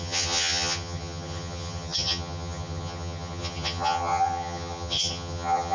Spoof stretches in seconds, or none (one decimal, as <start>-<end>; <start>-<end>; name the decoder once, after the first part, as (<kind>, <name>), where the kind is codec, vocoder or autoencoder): 0.0-5.7 (vocoder, HiFi-GAN)